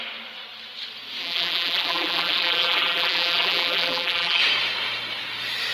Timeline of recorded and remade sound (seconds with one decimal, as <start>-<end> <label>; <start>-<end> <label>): 0.0-1.2 recorded; 1.2-4.4 remade; 4.4-5.7 recorded